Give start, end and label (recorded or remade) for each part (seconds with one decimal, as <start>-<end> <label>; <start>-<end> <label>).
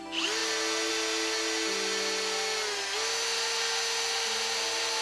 0.0-5.0 recorded